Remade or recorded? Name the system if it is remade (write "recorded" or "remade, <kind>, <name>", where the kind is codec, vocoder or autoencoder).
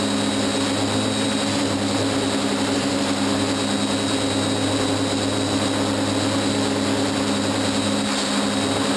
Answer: recorded